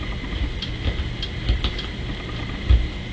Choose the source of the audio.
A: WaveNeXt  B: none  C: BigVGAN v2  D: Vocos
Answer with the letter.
B